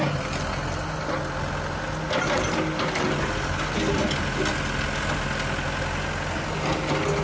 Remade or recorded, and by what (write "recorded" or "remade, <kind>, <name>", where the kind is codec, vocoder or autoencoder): recorded